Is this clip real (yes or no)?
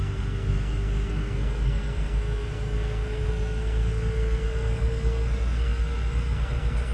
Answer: no